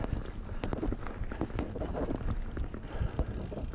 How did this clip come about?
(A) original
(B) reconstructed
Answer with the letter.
A